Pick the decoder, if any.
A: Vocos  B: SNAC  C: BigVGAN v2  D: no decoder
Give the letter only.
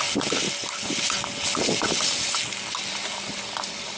D